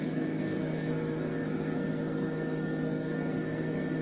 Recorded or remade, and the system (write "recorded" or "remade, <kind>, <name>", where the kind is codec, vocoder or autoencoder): remade, codec, SNAC